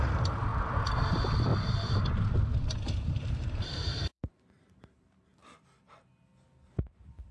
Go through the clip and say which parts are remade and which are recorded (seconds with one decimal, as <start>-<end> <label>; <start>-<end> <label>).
0.0-0.5 remade; 0.5-1.1 recorded; 1.1-1.5 remade; 1.5-2.8 recorded; 2.8-5.3 remade; 5.3-7.3 recorded